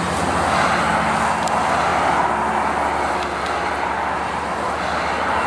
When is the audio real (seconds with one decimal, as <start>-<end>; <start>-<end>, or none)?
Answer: 0.0-5.5